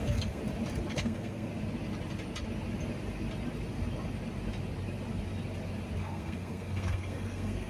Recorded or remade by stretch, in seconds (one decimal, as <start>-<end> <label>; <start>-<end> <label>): 0.0-0.4 remade; 0.4-0.9 recorded; 0.9-1.5 remade; 1.5-6.0 recorded; 6.0-7.7 remade